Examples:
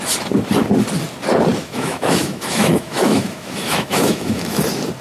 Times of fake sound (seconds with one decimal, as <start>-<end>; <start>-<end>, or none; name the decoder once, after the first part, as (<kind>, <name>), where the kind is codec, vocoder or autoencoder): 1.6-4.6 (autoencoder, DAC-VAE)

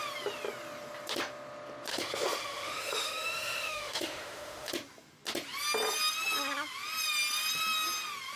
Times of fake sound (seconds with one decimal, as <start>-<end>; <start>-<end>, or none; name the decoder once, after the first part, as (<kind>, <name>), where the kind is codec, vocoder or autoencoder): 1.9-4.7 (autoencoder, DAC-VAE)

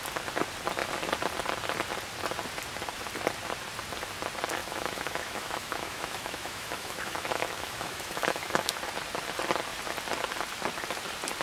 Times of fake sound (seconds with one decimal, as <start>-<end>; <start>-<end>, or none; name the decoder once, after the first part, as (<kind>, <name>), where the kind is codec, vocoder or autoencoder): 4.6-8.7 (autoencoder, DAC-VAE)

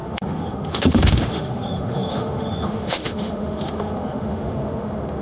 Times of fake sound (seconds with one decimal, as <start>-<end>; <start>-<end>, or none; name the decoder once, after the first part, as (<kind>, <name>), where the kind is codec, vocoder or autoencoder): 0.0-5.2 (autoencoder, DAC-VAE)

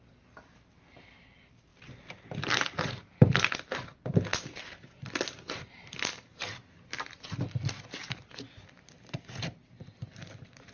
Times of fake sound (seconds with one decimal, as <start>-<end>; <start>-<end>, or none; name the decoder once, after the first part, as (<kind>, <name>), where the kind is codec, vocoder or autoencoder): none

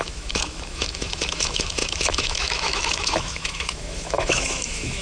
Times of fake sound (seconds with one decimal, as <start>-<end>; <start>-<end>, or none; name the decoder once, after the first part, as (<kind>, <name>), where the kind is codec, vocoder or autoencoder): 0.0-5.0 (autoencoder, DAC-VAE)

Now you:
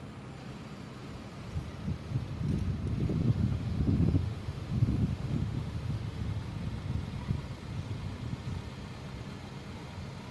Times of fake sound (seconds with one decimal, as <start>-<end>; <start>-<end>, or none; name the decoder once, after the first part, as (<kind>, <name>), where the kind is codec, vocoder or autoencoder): 3.3-6.3 (autoencoder, DAC-VAE)